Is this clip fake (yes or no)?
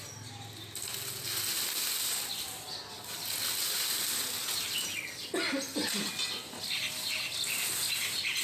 no